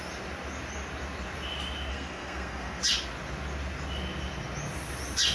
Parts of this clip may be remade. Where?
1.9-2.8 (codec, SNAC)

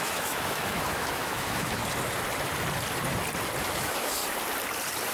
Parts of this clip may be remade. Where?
0.0-1.8 (autoencoder, DAC-VAE); 3.6-4.2

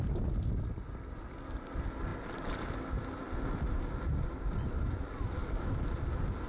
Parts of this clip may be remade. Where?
none

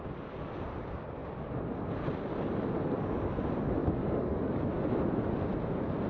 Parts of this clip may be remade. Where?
3.8-4.6 (codec, DAC)

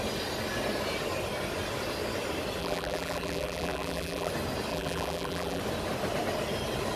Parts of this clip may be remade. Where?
2.6-4.3 (vocoder, BigVGAN v2); 4.7-5.6

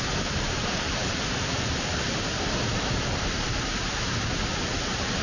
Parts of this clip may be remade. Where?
none

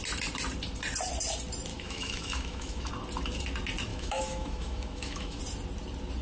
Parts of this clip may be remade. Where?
1.7-2.9 (autoencoder, DAC-VAE); 3.9-5.4